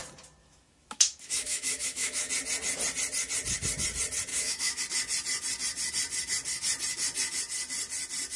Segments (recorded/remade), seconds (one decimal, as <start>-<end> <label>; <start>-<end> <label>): 0.0-0.4 recorded; 0.4-2.3 remade; 2.3-4.3 recorded; 4.3-4.8 remade; 4.8-8.4 recorded